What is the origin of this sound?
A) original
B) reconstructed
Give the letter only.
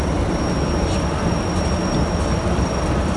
A